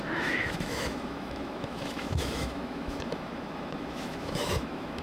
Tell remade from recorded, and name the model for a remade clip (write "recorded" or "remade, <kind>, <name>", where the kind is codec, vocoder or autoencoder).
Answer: remade, autoencoder, DAC-VAE